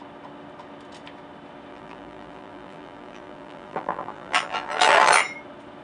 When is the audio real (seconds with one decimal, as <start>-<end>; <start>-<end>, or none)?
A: 0.0-1.7; 5.2-5.8